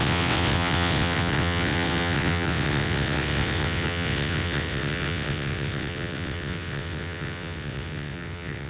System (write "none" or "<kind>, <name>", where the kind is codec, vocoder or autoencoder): vocoder, WaveNeXt